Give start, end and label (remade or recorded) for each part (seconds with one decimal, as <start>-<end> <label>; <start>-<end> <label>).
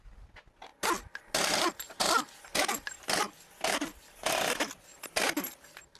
0.0-6.0 recorded